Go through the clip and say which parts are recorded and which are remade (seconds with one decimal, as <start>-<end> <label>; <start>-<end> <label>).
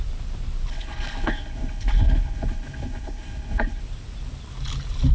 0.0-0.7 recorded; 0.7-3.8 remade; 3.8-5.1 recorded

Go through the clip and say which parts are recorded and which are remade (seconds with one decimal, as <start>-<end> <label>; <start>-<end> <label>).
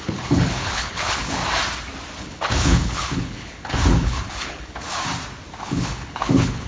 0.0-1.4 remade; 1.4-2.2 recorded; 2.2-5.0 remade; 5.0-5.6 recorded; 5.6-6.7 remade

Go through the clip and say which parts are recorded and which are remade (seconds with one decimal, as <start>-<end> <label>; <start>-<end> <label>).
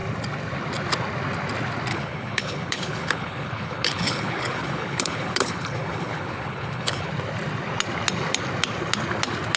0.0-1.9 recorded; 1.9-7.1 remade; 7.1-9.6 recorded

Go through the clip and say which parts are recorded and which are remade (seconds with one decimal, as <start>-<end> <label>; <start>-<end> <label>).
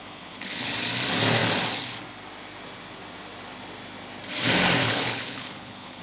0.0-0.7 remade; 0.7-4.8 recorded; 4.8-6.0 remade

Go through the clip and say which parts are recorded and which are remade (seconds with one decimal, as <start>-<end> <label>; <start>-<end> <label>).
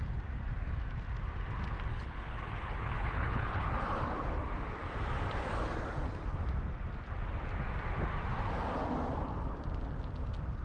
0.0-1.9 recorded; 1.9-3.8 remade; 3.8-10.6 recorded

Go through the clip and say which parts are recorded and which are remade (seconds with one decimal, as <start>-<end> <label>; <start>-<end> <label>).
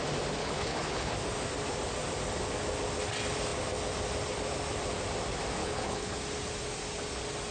0.0-0.4 recorded; 0.4-1.1 remade; 1.1-5.6 recorded; 5.6-6.2 remade; 6.2-7.5 recorded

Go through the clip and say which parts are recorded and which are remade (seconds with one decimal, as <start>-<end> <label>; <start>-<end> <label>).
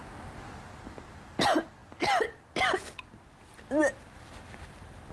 0.0-5.1 recorded